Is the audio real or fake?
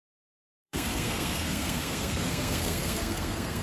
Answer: fake